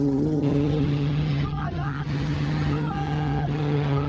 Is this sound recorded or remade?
remade